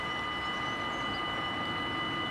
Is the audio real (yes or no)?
yes